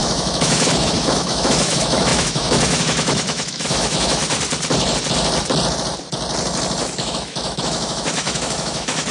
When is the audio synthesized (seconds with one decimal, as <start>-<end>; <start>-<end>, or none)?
0.0-4.2; 6.8-9.1

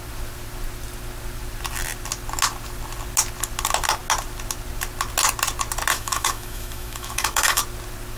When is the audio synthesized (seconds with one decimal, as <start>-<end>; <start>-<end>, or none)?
5.9-7.6

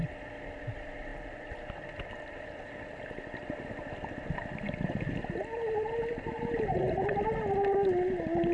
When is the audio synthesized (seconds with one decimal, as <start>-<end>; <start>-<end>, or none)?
none

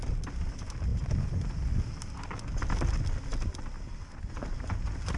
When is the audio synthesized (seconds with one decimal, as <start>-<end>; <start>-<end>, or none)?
none

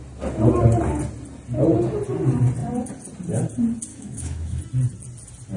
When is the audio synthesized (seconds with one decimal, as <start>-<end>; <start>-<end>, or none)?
3.9-4.6

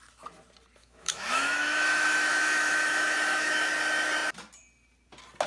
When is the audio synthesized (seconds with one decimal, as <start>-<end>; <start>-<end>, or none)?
0.8-3.7

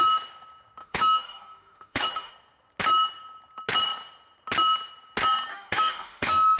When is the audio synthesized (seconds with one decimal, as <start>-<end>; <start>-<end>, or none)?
0.8-2.3; 5.5-6.6